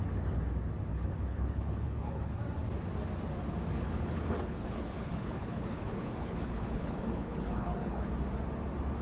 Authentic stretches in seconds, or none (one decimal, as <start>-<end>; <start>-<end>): 0.0-0.9; 2.4-3.7; 8.1-9.0